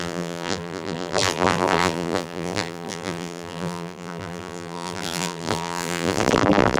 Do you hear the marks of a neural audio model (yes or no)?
yes